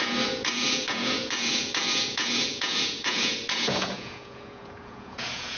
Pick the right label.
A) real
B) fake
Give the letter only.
B